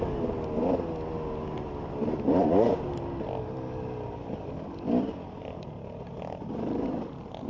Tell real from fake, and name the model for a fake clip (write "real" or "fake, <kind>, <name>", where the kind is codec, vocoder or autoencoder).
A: real